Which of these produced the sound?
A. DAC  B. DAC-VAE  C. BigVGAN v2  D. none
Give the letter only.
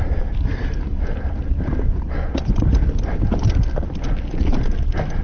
C